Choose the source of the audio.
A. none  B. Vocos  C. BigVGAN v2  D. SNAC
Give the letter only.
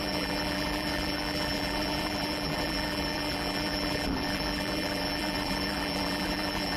C